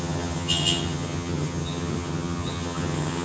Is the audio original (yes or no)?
no